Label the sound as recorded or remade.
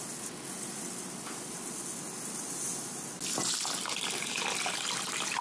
recorded